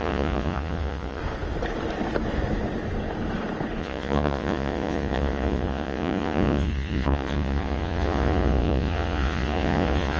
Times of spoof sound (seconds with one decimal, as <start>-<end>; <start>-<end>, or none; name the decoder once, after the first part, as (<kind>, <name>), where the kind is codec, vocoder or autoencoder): 0.0-1.2 (vocoder, Vocos); 3.8-10.2

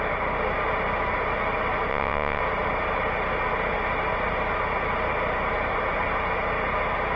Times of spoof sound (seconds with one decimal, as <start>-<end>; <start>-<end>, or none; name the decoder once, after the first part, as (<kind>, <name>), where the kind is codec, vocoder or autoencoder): 1.9-2.4 (vocoder, WaveNeXt)

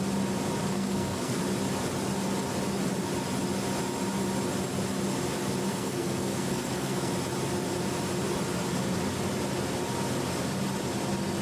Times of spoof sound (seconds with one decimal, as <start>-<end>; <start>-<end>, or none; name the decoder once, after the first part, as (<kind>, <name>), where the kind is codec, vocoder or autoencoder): 0.6-1.4 (codec, SNAC); 5.7-7.1

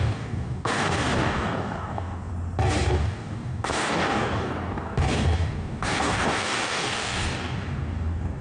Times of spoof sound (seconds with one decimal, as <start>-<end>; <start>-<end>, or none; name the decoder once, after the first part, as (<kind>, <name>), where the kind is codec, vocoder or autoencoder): 0.0-2.3 (codec, DAC); 2.9-8.4

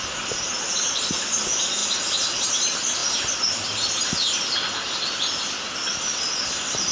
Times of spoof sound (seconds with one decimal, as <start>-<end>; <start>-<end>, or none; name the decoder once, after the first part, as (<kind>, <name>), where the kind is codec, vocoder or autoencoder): none